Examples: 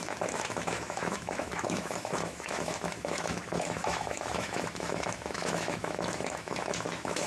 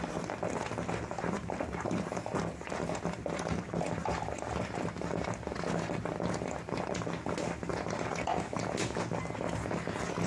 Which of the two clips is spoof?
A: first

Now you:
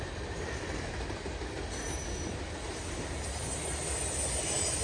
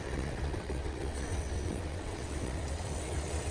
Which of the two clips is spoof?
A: second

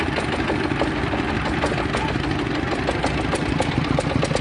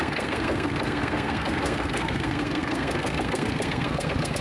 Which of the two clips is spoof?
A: second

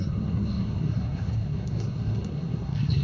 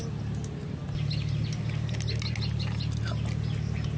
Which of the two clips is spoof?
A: first